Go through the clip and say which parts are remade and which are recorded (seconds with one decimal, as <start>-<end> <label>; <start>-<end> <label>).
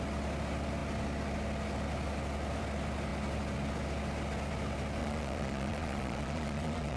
0.0-5.0 recorded; 5.0-7.0 remade